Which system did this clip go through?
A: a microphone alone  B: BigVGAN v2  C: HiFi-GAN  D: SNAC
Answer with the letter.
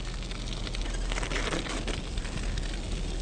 A